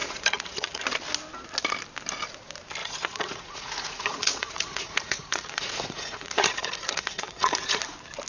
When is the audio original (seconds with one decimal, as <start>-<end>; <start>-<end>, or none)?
0.8-2.8; 7.8-8.3